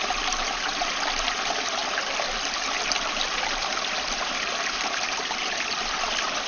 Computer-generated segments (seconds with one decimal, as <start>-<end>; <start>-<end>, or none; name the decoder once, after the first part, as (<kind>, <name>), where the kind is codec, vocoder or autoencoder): none